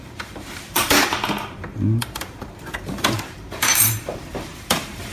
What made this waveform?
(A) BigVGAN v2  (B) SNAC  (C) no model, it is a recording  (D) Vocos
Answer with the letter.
A